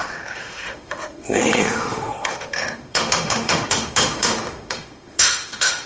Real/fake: fake